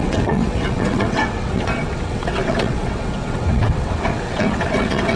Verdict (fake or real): fake